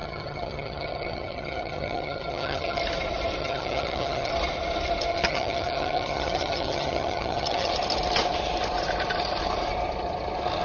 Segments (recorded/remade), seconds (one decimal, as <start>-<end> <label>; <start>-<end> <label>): 0.0-2.8 remade; 2.8-3.4 recorded; 3.4-4.3 remade; 4.3-5.1 recorded; 5.1-7.7 remade; 7.7-10.6 recorded